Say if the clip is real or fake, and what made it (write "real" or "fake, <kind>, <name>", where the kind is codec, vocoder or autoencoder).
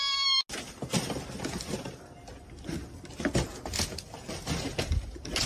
real